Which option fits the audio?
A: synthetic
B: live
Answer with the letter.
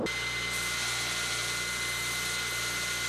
B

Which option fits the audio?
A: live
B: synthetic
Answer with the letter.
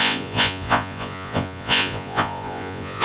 B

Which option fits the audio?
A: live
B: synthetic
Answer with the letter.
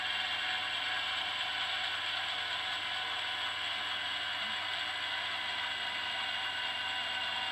A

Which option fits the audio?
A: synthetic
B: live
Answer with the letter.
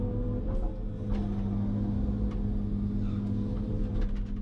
B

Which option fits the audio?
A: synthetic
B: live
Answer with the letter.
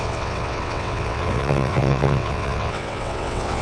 A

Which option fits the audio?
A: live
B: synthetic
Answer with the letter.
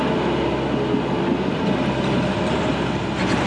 A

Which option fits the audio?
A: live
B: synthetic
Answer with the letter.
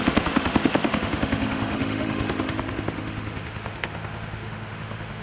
B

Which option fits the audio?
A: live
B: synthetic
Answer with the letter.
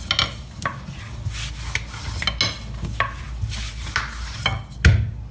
A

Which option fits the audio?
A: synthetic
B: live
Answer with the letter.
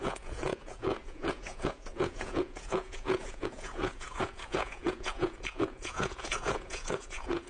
A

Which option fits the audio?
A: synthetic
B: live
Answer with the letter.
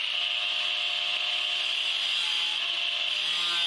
B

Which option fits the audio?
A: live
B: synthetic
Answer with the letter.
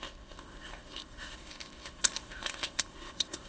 B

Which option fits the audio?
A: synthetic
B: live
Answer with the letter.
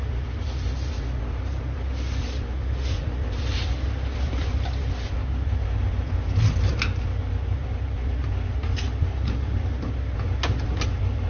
B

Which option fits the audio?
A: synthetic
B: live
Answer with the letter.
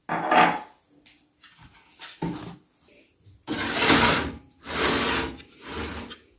B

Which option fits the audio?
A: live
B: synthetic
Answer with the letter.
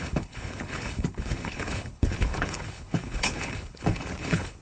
B